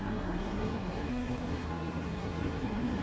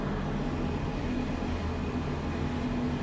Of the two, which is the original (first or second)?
second